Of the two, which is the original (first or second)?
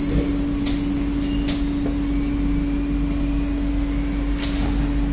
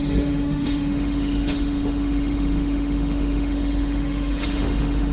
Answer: first